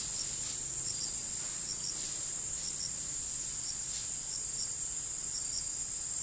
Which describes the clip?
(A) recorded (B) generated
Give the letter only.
A